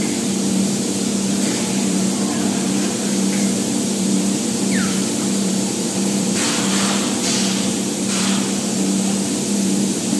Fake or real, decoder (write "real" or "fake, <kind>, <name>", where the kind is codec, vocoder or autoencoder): fake, vocoder, BigVGAN v2